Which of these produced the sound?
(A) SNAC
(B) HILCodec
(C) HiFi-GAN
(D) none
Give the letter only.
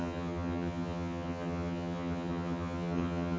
C